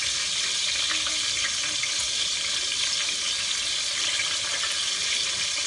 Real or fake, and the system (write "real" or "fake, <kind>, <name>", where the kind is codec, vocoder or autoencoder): real